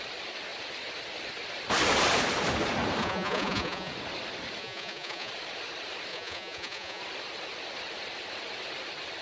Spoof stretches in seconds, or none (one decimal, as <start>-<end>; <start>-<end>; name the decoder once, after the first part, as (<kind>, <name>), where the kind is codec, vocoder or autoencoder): 3.0-3.9 (vocoder, Vocos); 4.6-5.3; 6.1-7.0